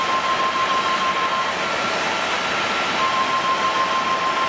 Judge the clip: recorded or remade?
recorded